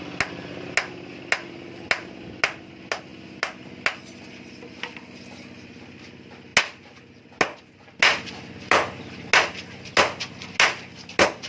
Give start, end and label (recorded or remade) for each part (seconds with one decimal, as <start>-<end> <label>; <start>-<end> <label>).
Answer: 0.0-11.5 recorded